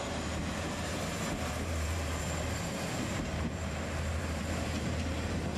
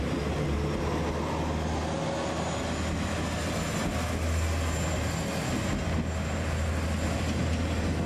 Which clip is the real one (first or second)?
second